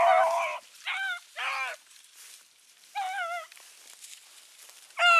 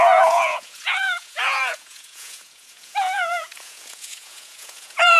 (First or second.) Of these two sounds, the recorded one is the first